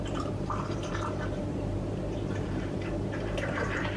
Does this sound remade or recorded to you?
remade